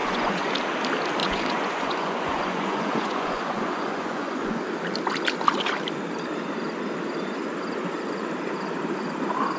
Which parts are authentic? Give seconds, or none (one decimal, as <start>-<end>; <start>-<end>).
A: 0.5-1.2; 4.6-9.6